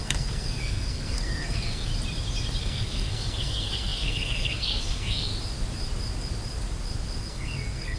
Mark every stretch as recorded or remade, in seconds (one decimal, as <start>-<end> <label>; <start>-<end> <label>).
0.0-1.9 remade; 1.9-2.6 recorded; 2.6-5.3 remade; 5.3-7.2 recorded; 7.2-8.0 remade